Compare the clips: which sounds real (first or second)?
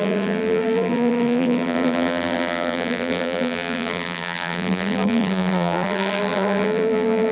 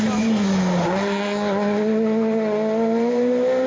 second